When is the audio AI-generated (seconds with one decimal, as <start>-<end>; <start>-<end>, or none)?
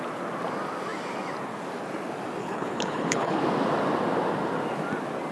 2.4-3.4